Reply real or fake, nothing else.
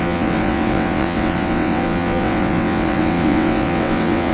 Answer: fake